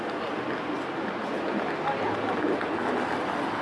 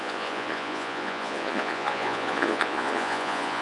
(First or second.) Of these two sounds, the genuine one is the first